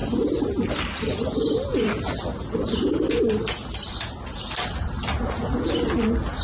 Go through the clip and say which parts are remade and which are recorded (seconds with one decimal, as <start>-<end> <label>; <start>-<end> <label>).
0.0-6.4 recorded